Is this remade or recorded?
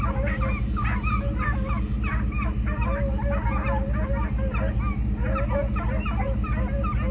recorded